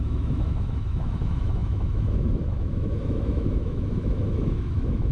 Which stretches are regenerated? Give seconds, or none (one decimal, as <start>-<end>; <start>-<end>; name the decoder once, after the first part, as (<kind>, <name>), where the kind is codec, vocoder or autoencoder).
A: 0.0-5.1 (autoencoder, DAC-VAE)